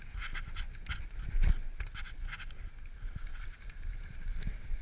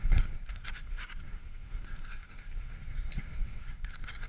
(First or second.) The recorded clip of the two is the first